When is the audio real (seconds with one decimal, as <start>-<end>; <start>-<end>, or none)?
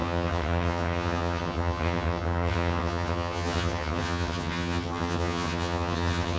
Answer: none